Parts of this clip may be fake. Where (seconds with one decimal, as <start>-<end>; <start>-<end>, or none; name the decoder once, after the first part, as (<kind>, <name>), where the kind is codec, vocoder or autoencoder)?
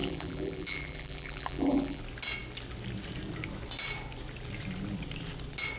0.0-2.0 (vocoder, BigVGAN v2)